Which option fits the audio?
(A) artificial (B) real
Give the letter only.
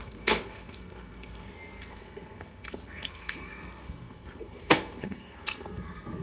A